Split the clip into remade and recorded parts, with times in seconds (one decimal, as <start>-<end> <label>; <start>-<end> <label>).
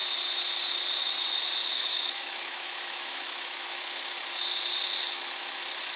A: 0.0-1.6 recorded; 1.6-3.8 remade; 3.8-5.0 recorded; 5.0-5.6 remade; 5.6-6.0 recorded